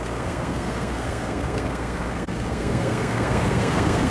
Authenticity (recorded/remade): remade